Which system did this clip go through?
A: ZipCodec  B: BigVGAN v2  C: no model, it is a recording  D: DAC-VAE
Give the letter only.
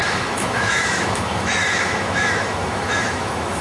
D